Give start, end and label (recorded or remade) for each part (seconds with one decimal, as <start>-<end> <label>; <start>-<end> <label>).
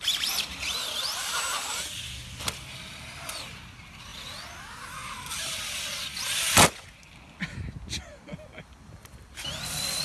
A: 0.0-10.0 recorded